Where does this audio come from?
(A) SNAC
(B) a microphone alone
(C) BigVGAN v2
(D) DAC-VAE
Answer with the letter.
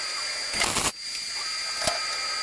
B